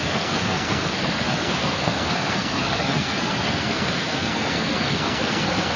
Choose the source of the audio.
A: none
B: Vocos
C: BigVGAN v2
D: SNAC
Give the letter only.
D